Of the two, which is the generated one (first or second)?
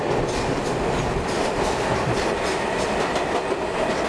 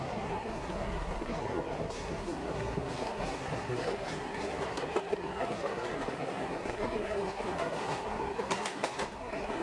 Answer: second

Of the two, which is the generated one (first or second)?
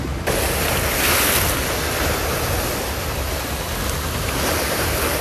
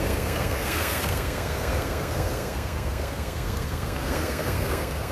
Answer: second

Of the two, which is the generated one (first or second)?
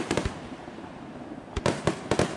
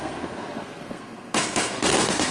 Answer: second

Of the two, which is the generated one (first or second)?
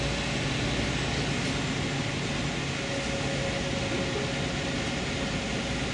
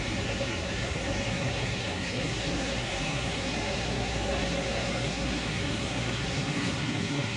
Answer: second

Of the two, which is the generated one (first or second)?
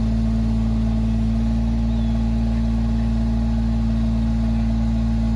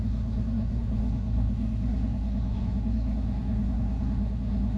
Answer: second